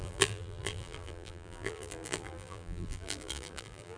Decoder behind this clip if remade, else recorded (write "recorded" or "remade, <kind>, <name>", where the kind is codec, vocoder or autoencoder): remade, vocoder, BigVGAN v2